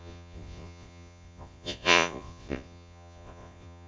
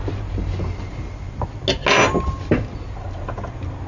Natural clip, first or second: second